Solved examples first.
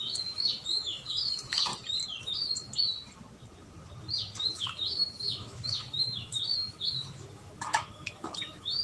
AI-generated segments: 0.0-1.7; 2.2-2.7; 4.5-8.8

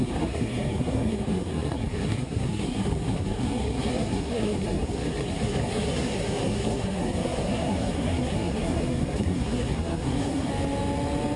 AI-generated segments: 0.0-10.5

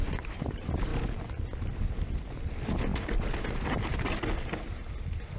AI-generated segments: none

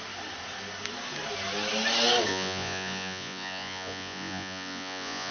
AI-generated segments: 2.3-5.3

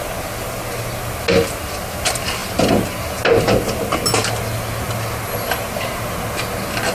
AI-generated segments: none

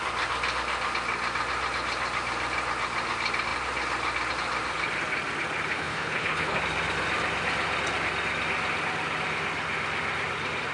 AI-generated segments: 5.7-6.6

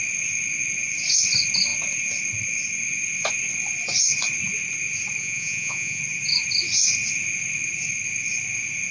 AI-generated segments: 5.2-6.0

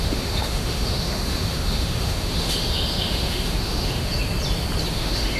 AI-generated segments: 0.0-4.1; 4.9-5.4